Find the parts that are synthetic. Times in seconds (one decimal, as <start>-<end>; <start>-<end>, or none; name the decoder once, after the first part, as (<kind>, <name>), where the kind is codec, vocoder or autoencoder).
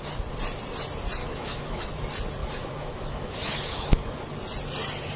1.2-1.8 (autoencoder, DAC-VAE); 2.4-4.2